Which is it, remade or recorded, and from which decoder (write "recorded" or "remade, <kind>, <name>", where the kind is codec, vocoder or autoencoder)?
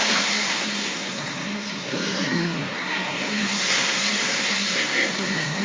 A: remade, codec, SNAC